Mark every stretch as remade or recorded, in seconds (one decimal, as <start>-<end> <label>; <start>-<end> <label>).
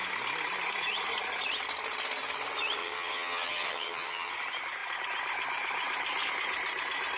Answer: 0.0-2.8 recorded; 2.8-4.3 remade; 4.3-7.2 recorded